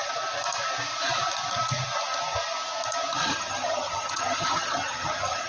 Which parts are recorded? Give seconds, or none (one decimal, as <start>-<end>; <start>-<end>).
0.0-3.3